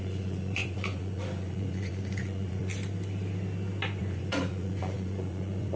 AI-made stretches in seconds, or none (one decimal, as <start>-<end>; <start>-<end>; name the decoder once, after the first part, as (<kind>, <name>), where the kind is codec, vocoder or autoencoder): 0.0-2.7 (vocoder, Vocos); 4.0-5.8